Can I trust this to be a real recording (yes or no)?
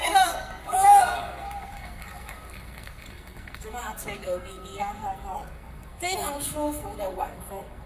no